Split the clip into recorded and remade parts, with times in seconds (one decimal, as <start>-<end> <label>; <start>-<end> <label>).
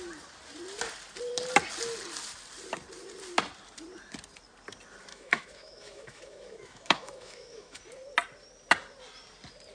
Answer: 0.0-5.1 recorded; 5.1-7.8 remade; 7.8-9.7 recorded